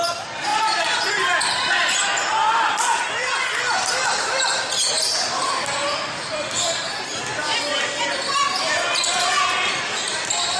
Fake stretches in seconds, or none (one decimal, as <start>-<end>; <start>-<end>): 0.5-1.1